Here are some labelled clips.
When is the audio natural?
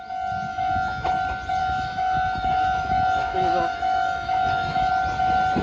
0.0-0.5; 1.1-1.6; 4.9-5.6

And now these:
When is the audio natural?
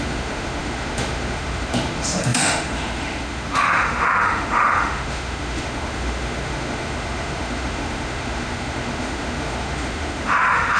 none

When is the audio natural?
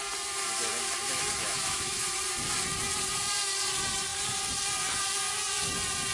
0.0-0.7; 2.2-6.1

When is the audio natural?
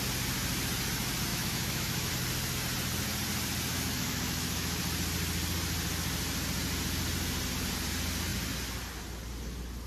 0.0-1.3; 2.1-3.7; 4.8-9.9